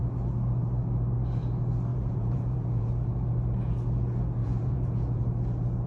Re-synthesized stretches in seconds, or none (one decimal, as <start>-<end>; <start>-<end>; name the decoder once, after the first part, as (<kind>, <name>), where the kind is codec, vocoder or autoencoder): 1.9-2.9 (vocoder, Vocos); 4.4-5.2